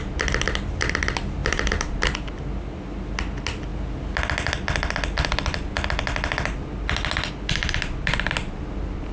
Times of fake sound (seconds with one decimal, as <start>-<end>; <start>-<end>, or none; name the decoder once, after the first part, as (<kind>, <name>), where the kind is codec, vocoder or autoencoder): 1.4-2.0 (vocoder, BigVGAN v2)